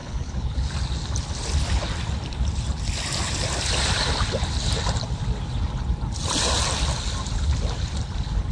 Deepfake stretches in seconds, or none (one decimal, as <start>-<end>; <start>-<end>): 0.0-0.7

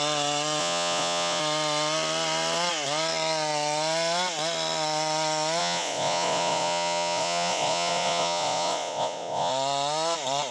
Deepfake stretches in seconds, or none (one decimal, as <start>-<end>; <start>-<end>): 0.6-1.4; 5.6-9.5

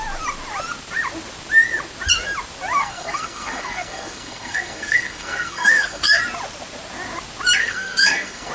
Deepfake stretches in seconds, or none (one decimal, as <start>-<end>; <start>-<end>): 2.8-6.2; 7.6-8.5

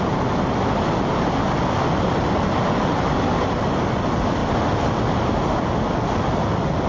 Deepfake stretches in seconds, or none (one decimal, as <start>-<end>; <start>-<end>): none